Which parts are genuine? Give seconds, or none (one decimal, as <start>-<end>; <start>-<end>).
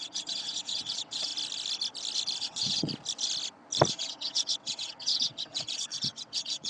1.3-2.4; 2.9-3.9